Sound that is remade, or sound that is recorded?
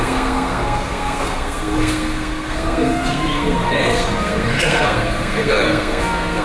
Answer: remade